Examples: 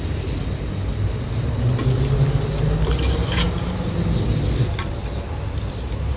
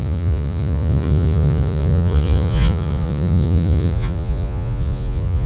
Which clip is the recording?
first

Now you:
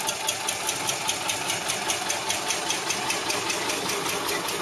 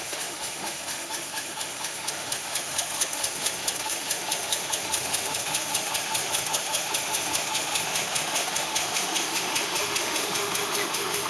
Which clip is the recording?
first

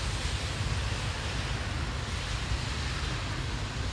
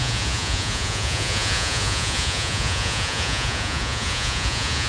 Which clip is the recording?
first